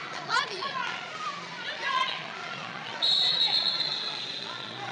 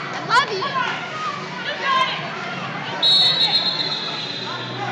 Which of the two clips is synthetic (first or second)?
first